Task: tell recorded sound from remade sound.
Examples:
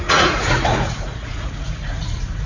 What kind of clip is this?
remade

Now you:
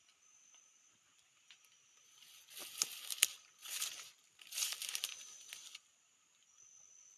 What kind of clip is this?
recorded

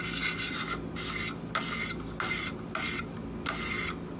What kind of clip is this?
recorded